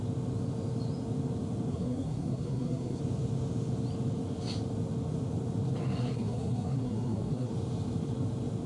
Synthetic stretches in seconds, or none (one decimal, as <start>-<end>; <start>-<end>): 1.7-3.0; 6.0-7.5